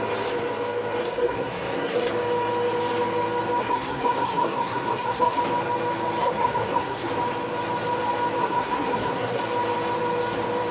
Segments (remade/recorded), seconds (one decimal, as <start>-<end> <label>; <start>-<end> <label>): 0.0-1.0 recorded; 1.0-2.1 remade; 2.1-3.6 recorded; 3.6-5.4 remade; 5.4-6.2 recorded; 6.2-7.1 remade; 7.1-8.4 recorded; 8.4-9.4 remade; 9.4-10.7 recorded